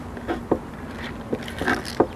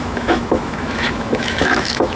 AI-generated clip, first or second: second